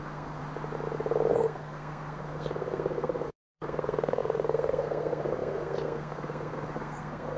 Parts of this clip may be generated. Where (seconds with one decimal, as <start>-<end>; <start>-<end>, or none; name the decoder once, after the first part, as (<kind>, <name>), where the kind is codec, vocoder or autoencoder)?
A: 0.0-0.4 (codec, SNAC); 1.3-7.4